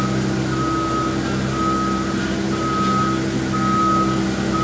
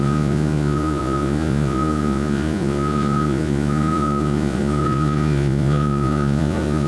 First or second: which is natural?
first